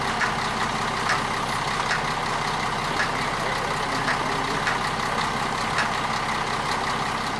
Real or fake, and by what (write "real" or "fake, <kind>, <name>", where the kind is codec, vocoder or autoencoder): real